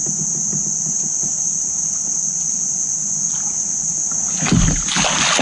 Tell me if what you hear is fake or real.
real